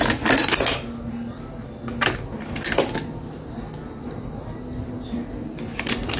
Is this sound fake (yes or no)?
no